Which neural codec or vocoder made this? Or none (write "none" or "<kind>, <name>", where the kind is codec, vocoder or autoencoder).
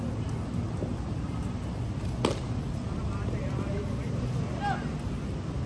none